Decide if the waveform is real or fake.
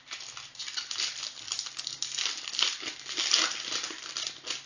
real